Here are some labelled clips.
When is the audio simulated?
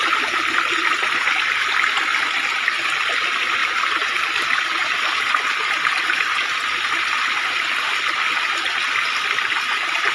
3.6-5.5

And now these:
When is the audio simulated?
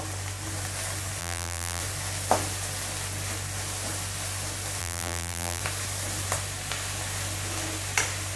1.2-1.8; 4.8-5.6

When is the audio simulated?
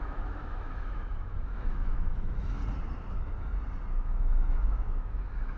0.0-2.6; 3.9-5.6